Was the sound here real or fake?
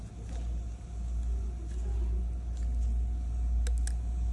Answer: real